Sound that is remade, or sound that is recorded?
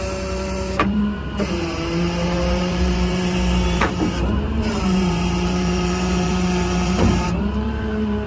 remade